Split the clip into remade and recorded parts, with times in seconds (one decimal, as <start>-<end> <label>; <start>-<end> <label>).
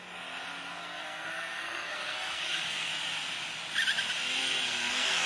0.0-0.8 recorded; 0.8-2.9 remade; 2.9-4.4 recorded; 4.4-5.3 remade